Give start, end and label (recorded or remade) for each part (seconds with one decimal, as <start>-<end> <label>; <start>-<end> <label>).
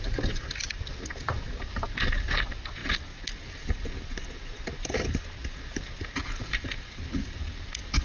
0.0-8.0 recorded